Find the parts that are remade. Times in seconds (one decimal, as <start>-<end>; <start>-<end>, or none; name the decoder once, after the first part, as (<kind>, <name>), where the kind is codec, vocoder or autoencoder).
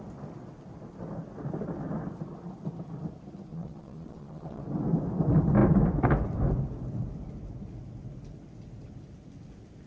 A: 3.5-4.6 (vocoder, Vocos)